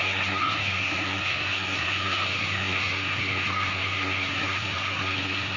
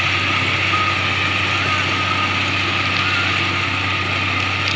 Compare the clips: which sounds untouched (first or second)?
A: second